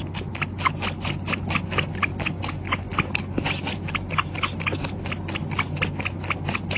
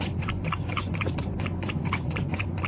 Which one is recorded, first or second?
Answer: first